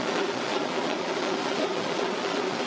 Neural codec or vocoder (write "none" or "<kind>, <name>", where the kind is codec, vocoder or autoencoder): vocoder, Vocos